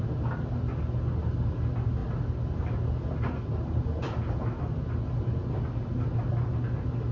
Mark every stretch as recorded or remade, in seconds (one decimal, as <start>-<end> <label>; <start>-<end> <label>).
0.0-7.1 recorded